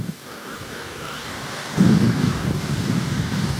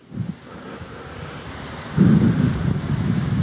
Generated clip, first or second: first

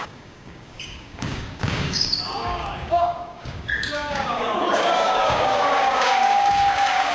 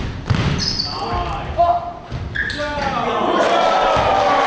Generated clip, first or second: first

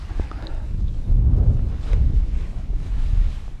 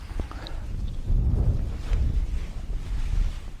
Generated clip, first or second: first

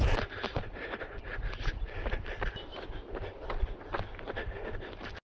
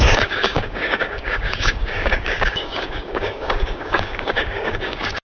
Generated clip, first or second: second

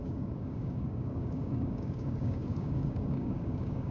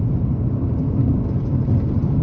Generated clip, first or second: first